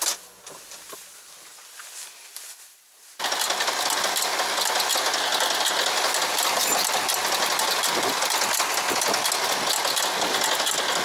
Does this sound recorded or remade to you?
recorded